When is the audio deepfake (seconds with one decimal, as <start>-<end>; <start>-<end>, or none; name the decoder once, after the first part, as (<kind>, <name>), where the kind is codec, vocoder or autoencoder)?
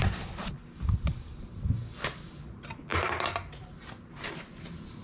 none